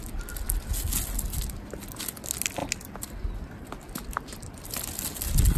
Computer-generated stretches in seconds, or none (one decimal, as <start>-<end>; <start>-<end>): none